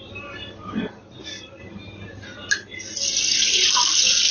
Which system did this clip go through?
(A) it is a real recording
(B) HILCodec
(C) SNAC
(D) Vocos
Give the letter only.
A